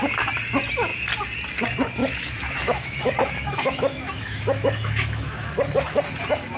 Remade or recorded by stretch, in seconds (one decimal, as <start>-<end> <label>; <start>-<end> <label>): 0.0-2.0 recorded; 2.0-6.0 remade; 6.0-6.6 recorded